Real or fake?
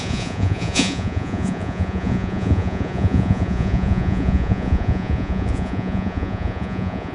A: fake